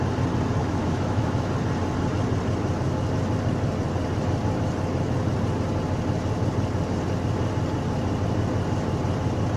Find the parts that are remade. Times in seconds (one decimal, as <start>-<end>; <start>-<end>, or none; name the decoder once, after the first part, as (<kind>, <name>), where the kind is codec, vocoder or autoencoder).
0.6-1.5 (autoencoder, DAC-VAE)